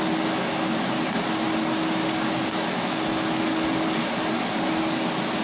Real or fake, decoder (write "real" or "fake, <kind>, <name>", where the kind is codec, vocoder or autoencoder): real